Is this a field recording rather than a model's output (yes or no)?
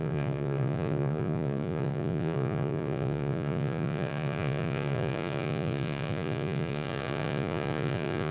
no